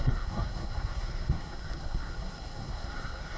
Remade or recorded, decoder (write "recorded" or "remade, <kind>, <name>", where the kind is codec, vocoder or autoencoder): remade, codec, SNAC